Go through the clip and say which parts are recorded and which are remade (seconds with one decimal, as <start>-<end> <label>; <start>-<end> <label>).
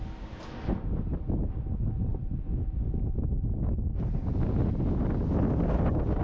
0.0-6.2 recorded